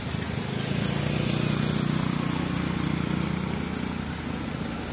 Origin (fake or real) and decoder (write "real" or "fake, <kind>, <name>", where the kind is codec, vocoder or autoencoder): real